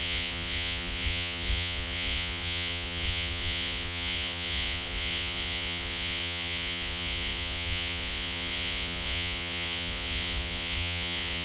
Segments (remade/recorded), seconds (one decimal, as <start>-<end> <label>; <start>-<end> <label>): 0.0-11.4 remade